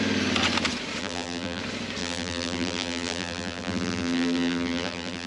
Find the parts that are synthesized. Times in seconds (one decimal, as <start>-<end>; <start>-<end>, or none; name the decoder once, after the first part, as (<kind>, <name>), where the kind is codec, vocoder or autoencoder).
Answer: 1.0-1.6 (vocoder, BigVGAN v2); 2.0-5.3